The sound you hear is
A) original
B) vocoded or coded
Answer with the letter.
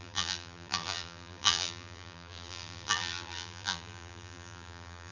B